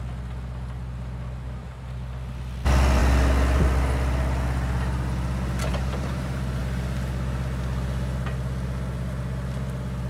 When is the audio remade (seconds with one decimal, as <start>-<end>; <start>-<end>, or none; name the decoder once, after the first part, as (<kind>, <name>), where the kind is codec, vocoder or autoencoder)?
5.7-6.6 (vocoder, BigVGAN v2)